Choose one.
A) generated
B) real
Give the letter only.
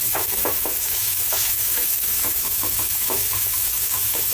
A